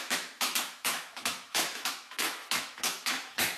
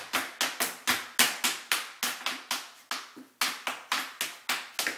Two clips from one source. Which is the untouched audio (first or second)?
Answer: second